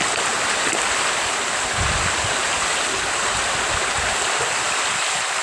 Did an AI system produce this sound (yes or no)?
no